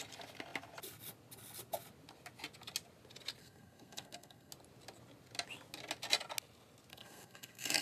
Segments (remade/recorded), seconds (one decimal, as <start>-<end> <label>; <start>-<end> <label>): 0.0-3.4 recorded; 3.4-4.5 remade; 4.5-6.9 recorded; 6.9-7.8 remade